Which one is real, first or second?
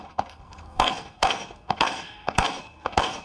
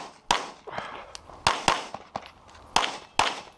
second